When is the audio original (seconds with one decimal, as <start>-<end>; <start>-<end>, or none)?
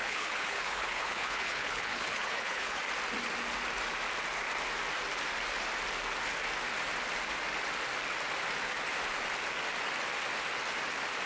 2.8-11.3